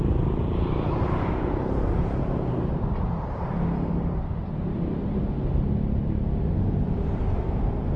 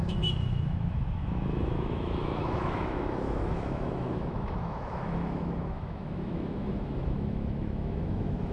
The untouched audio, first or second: first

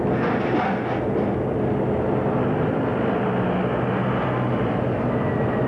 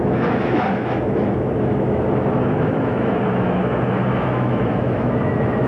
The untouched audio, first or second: first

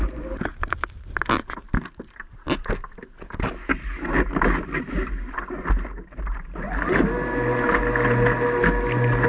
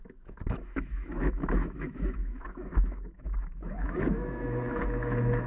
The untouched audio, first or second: first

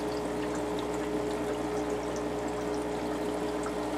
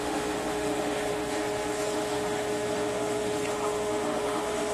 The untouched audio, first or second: first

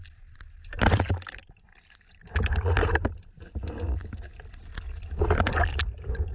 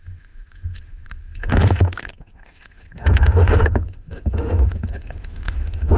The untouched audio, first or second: first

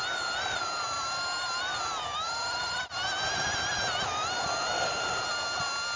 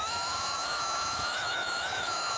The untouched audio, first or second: first